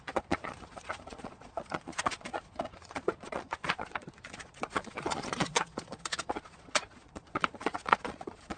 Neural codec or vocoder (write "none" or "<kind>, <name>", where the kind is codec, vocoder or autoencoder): vocoder, Vocos